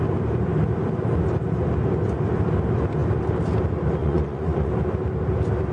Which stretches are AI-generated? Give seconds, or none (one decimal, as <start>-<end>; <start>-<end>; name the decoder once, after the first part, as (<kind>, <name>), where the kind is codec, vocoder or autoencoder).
4.0-4.7 (vocoder, Vocos)